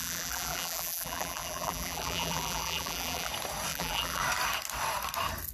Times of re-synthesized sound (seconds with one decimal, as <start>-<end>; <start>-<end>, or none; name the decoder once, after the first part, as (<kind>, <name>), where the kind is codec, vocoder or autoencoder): 0.0-3.3 (vocoder, BigVGAN v2); 3.7-4.2